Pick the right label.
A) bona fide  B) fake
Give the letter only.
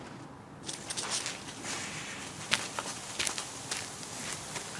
A